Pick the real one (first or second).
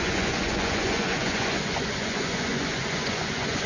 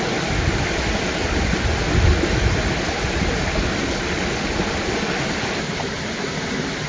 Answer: second